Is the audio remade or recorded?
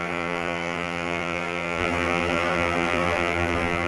remade